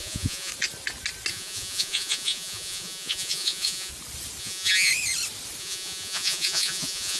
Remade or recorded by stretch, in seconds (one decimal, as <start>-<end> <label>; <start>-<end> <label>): 0.0-0.5 remade; 0.5-1.3 recorded; 1.3-3.9 remade; 3.9-4.4 recorded; 4.4-4.9 remade; 4.9-5.6 recorded; 5.6-7.2 remade